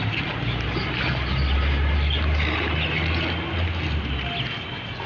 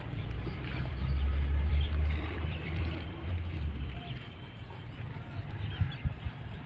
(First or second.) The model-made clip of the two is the second